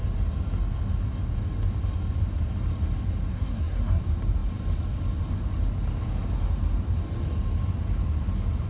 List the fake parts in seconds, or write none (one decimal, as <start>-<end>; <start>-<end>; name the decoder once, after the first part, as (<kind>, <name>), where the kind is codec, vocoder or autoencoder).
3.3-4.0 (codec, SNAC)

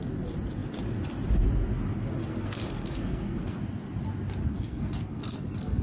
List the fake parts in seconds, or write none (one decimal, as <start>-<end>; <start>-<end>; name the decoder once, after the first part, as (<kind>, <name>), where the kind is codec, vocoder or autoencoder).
2.2-3.6 (codec, SNAC); 4.4-5.8

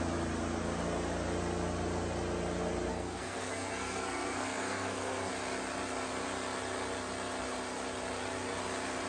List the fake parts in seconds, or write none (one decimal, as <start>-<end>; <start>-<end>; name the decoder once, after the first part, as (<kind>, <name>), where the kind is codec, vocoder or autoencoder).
2.9-5.3 (codec, SNAC)

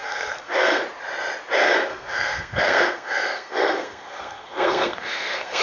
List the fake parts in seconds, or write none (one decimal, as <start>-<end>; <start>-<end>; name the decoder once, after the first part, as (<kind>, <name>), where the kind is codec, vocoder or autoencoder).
0.0-0.8 (codec, SNAC); 1.9-5.6

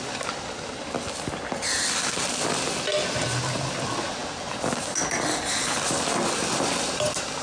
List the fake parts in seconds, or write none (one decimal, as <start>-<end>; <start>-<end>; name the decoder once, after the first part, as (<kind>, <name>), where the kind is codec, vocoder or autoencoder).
none

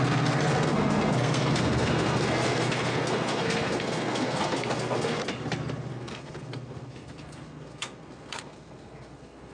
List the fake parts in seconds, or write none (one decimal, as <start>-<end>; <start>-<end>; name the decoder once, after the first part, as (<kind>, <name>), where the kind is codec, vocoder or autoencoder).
0.0-5.2 (codec, SNAC); 5.9-9.5